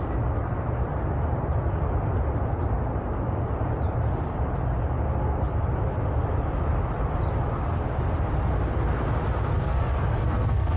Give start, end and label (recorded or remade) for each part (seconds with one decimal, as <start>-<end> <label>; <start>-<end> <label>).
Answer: 0.0-9.5 recorded; 9.5-10.8 remade

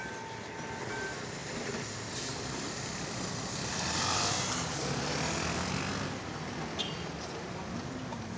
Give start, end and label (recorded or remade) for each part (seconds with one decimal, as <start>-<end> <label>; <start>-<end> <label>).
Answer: 0.0-1.4 recorded; 1.4-5.9 remade; 5.9-8.4 recorded

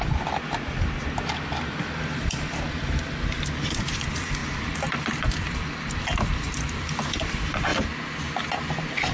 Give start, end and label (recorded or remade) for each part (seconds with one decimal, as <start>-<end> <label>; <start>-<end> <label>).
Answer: 0.0-7.7 remade; 7.7-9.1 recorded

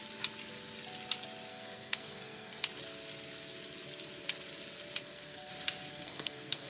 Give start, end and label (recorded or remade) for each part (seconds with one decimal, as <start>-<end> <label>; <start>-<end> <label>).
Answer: 0.0-1.5 recorded; 1.5-2.6 remade; 2.6-5.0 recorded; 5.0-5.5 remade; 5.5-5.9 recorded; 5.9-6.7 remade

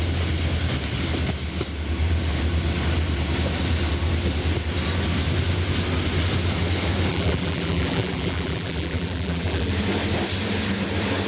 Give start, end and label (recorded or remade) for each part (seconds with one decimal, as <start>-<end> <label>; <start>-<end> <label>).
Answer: 0.0-7.1 recorded; 7.1-9.7 remade; 9.7-11.3 recorded

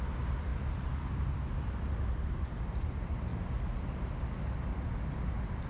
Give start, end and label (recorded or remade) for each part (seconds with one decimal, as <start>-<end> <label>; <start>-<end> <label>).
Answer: 0.0-3.3 recorded; 3.3-4.2 remade; 4.2-5.7 recorded

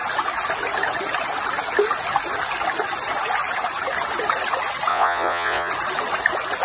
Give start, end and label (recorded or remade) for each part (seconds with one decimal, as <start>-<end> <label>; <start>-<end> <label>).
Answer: 0.0-4.9 recorded; 4.9-5.7 remade; 5.7-6.6 recorded

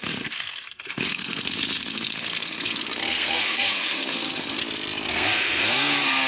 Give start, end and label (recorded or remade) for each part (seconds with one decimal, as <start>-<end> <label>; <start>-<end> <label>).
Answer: 0.0-4.6 remade; 4.6-5.1 recorded; 5.1-6.3 remade